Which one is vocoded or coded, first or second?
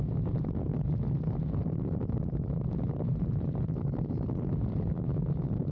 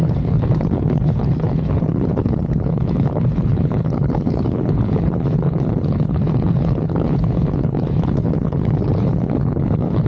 second